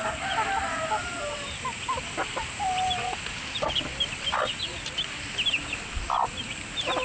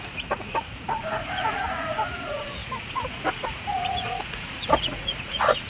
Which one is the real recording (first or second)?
first